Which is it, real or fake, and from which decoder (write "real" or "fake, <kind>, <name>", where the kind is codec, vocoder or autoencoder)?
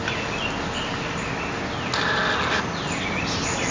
real